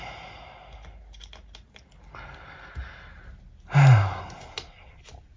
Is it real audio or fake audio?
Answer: real